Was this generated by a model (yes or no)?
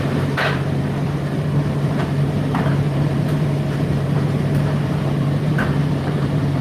yes